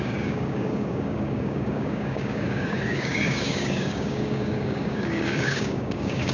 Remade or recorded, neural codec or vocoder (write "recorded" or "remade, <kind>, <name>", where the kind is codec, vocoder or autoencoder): remade, codec, DAC